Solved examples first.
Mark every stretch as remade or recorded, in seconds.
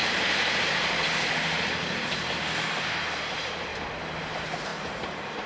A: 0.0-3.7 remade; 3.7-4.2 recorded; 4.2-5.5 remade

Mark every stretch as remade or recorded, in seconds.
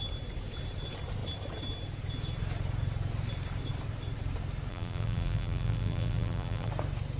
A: 0.0-4.7 recorded; 4.7-6.7 remade; 6.7-7.2 recorded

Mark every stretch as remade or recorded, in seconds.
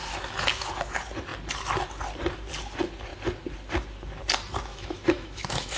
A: 0.0-0.9 remade; 0.9-4.7 recorded; 4.7-5.8 remade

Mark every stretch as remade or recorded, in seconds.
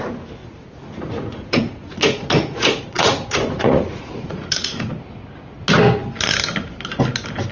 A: 0.0-0.4 recorded; 0.4-4.9 remade; 4.9-7.5 recorded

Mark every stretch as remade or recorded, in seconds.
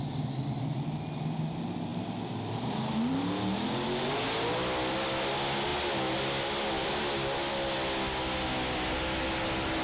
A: 0.0-9.8 recorded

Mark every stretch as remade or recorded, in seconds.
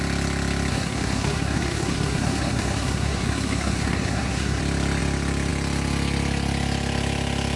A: 0.0-0.7 recorded; 0.7-4.6 remade; 4.6-7.6 recorded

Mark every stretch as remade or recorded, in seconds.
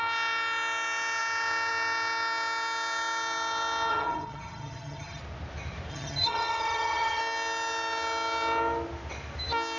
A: 0.0-3.9 recorded; 3.9-5.2 remade; 5.2-5.9 recorded; 5.9-7.2 remade; 7.2-9.8 recorded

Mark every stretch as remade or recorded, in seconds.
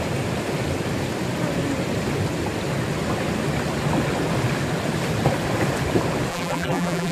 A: 0.0-6.3 recorded; 6.3-7.1 remade